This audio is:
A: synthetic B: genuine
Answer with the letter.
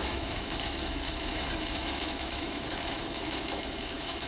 A